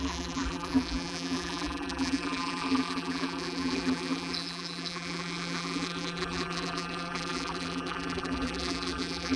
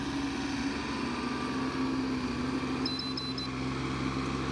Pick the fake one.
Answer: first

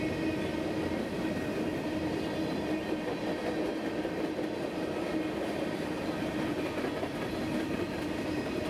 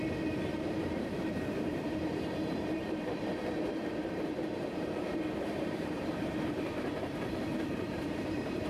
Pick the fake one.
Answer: second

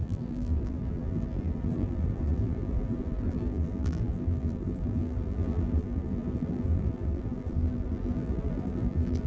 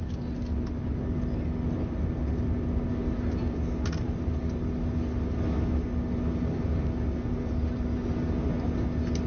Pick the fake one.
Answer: first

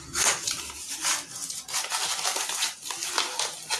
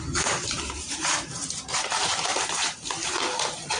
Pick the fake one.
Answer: second